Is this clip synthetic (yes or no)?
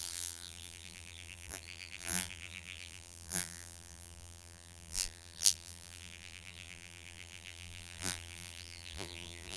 yes